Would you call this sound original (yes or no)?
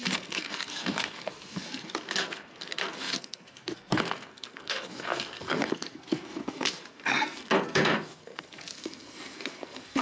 no